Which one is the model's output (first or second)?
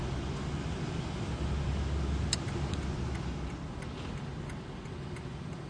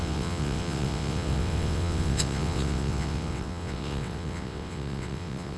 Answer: second